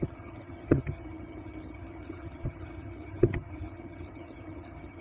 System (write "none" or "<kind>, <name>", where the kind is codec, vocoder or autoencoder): vocoder, HiFi-GAN